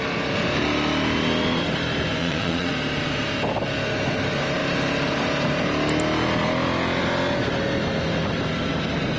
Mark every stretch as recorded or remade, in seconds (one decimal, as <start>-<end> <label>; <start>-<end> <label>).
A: 0.0-2.2 recorded; 2.2-2.7 remade; 2.7-9.2 recorded